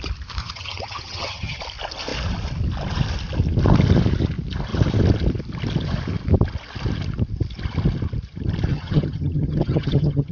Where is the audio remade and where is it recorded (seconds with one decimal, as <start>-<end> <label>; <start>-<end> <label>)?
0.0-0.4 recorded; 0.4-1.6 remade; 1.6-8.7 recorded; 8.7-10.3 remade